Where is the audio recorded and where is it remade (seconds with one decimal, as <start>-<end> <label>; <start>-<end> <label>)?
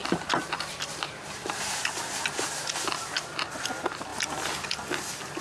0.0-1.8 remade; 1.8-5.4 recorded